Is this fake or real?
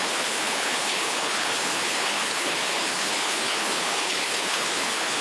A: fake